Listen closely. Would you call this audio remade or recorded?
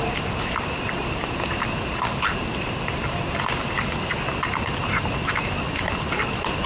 recorded